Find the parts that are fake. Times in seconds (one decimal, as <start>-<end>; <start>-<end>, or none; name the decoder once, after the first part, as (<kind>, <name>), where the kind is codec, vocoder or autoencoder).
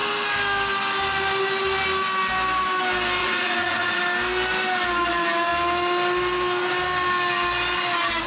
3.2-4.0 (vocoder, Vocos)